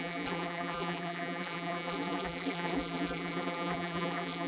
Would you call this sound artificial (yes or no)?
yes